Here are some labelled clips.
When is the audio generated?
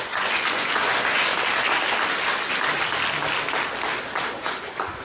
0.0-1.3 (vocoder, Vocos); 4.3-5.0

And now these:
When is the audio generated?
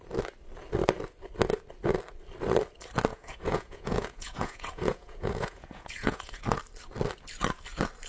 3.1-6.4 (vocoder, Vocos)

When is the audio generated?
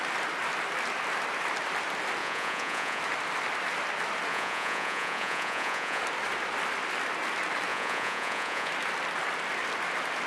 2.2-3.0 (vocoder, Vocos); 4.3-6.0; 7.7-8.7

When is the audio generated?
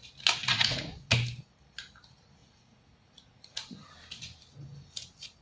0.4-1.1 (vocoder, Vocos); 2.4-3.9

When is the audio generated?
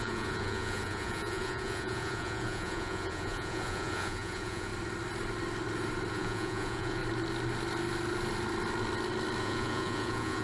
0.0-4.7 (vocoder, Vocos); 6.1-7.0; 9.4-10.4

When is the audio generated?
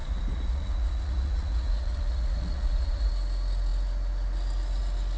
0.0-3.1 (vocoder, Vocos)